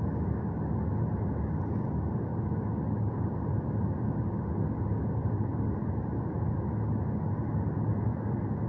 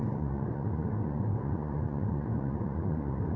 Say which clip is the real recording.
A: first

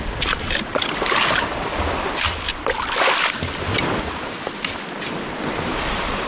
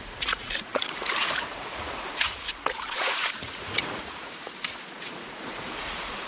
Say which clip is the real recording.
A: first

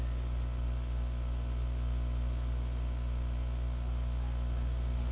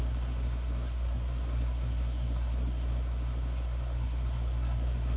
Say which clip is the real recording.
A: first